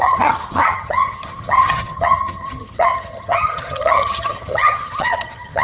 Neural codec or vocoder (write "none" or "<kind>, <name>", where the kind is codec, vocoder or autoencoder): vocoder, HiFi-GAN